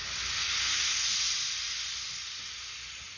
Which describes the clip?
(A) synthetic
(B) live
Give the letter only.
B